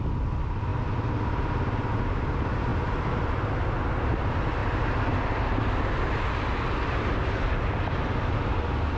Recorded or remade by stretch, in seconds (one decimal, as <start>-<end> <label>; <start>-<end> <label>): 0.0-9.0 recorded